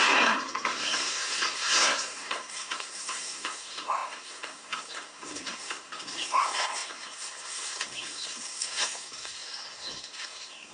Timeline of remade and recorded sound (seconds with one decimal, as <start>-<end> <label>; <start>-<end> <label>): 0.0-10.7 remade